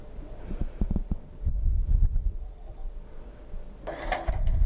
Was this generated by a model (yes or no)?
no